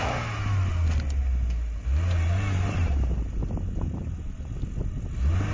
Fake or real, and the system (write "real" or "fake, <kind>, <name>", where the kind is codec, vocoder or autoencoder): real